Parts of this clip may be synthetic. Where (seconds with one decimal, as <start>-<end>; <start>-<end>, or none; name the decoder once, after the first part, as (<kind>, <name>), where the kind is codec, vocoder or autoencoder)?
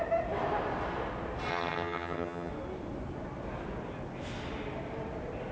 1.5-2.5 (vocoder, HiFi-GAN)